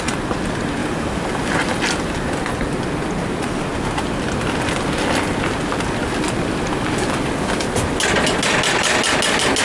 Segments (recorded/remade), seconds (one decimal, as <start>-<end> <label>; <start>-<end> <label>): 0.0-0.8 recorded; 0.8-1.6 remade; 1.6-9.6 recorded